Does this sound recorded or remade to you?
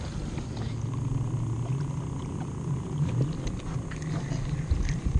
recorded